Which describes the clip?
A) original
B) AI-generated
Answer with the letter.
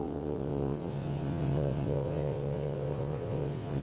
B